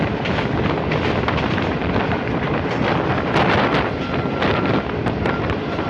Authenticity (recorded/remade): recorded